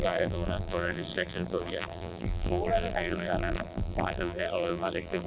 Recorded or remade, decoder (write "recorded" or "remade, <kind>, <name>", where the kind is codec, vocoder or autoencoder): remade, vocoder, BigVGAN v2